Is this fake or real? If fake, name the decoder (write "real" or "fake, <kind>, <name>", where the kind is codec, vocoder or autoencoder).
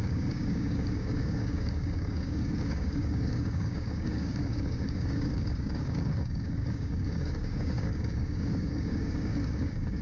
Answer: fake, codec, DAC